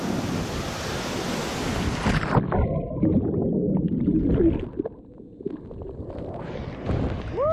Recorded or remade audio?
recorded